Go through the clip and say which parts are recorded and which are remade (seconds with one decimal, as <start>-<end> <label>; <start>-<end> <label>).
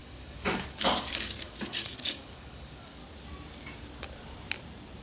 0.0-3.0 remade; 3.0-5.0 recorded